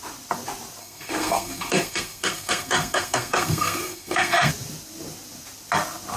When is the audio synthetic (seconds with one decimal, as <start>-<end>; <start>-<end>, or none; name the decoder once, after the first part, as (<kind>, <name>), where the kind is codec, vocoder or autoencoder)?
0.8-4.5 (codec, SNAC)